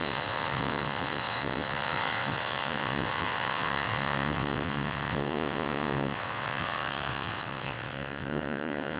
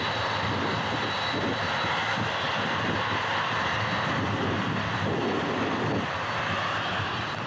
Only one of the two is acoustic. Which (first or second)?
second